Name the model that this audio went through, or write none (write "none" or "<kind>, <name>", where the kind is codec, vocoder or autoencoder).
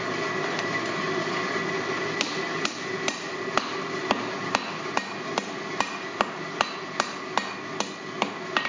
none